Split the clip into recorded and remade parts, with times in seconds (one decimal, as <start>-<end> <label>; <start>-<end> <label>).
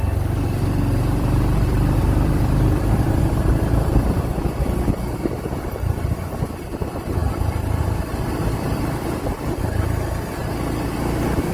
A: 0.0-7.2 remade; 7.2-7.8 recorded; 7.8-11.5 remade